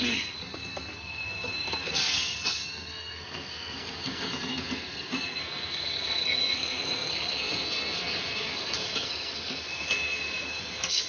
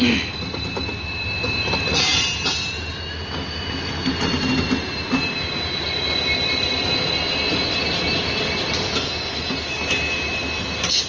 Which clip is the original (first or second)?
second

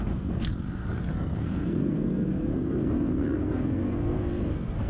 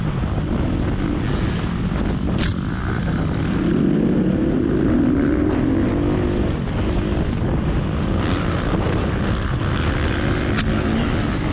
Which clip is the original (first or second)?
second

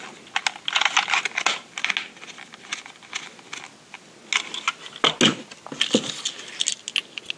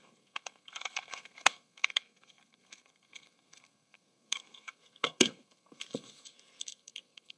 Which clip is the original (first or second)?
first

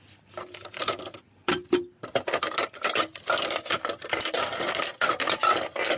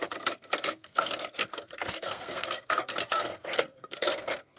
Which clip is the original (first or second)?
first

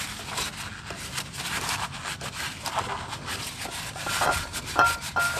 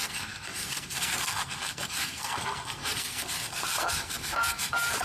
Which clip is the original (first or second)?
first